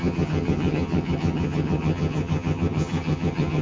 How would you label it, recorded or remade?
remade